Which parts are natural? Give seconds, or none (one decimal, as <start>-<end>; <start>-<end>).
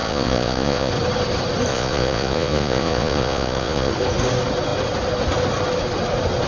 0.9-1.7; 3.9-6.5